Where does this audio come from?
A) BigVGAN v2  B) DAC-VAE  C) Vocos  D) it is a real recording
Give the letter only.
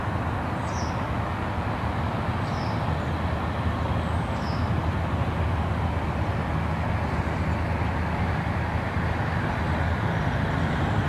D